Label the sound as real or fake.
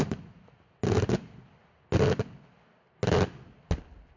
real